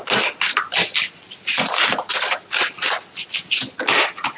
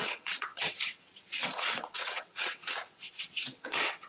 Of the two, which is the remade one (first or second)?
second